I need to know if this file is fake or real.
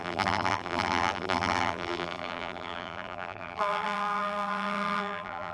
fake